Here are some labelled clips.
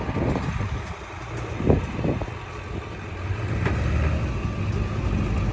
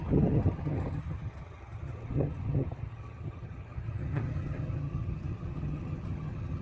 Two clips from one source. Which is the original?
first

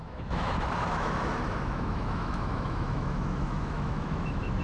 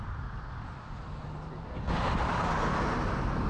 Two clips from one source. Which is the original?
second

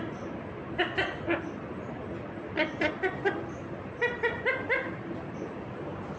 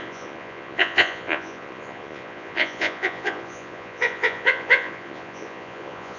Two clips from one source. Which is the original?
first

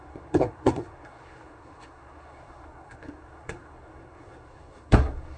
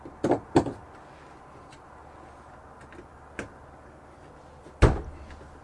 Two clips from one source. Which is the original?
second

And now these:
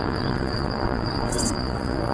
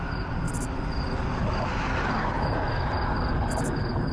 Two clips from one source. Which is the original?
second